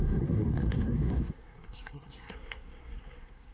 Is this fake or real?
fake